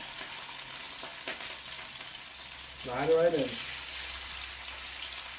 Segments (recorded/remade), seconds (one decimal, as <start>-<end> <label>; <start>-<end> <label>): 0.0-5.4 recorded